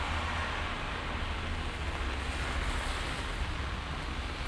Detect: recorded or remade recorded